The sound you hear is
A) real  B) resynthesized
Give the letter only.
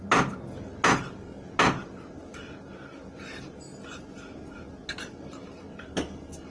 A